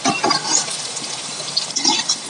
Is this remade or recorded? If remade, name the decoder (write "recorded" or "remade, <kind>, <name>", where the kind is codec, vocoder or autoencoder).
recorded